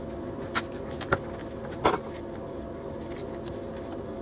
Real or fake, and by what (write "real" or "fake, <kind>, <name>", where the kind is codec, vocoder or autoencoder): real